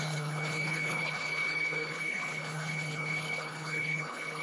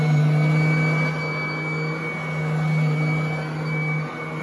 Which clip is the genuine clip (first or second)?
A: second